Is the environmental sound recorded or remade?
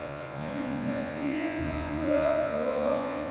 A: remade